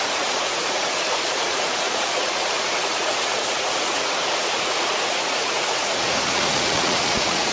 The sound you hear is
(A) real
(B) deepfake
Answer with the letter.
B